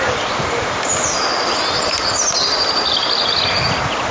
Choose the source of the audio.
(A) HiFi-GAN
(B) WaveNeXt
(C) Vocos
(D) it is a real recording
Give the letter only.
D